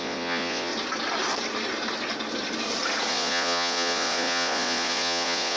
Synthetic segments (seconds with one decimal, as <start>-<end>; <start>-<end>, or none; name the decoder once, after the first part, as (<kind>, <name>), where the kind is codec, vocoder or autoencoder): 0.0-0.7 (vocoder, Vocos); 3.1-5.6